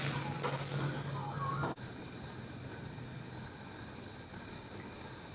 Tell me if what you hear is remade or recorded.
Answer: recorded